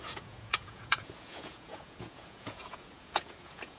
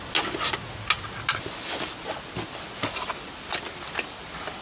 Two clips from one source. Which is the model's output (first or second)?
first